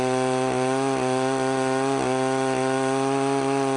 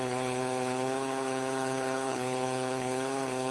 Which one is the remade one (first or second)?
second